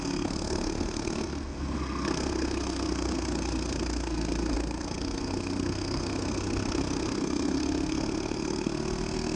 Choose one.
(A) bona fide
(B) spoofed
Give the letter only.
B